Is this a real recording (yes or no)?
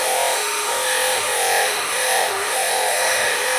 no